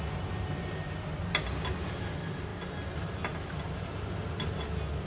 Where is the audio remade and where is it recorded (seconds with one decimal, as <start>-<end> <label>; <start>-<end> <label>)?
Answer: 0.0-5.1 recorded